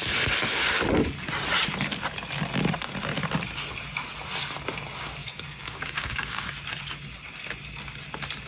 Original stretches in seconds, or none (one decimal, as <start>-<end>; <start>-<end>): 0.0-5.2; 6.5-8.5

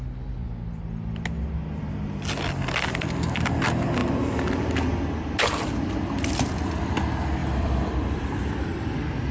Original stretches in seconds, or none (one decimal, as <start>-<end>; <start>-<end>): 0.0-7.4; 8.9-9.3